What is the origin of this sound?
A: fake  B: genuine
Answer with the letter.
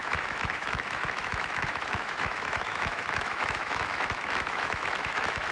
A